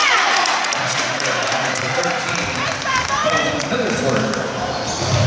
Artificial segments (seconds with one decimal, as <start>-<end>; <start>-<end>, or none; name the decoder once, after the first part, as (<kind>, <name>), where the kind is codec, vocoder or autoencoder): 0.0-2.2 (vocoder, Vocos); 3.2-4.0